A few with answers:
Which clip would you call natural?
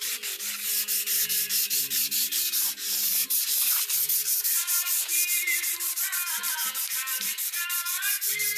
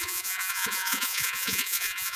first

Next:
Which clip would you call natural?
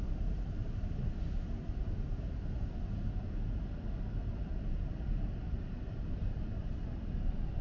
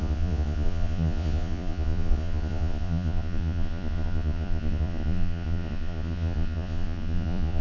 first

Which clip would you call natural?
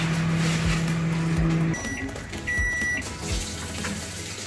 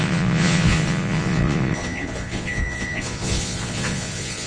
first